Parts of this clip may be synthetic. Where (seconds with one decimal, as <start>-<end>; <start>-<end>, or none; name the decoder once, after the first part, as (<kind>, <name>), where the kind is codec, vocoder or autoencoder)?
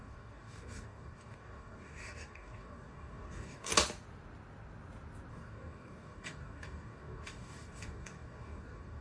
0.0-3.7 (codec, DAC); 5.3-9.0